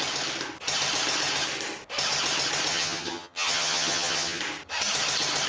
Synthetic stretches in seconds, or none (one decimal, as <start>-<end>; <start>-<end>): 2.7-4.4